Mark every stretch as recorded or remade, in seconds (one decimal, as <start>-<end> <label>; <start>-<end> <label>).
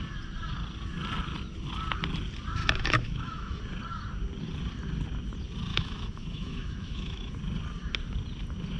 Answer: 0.0-2.6 recorded; 2.6-3.6 remade; 3.6-5.7 recorded; 5.7-7.3 remade; 7.3-8.8 recorded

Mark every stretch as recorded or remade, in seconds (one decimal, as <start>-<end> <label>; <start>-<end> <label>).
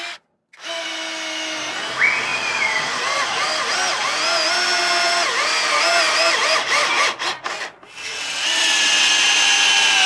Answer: 0.0-8.1 recorded; 8.1-9.1 remade; 9.1-10.1 recorded